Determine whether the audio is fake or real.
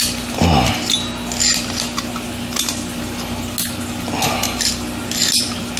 real